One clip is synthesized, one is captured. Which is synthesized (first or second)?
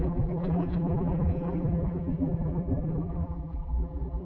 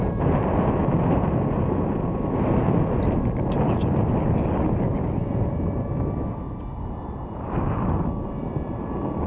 first